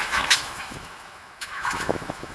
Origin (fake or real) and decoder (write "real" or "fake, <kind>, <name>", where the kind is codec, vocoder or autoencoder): fake, autoencoder, DAC-VAE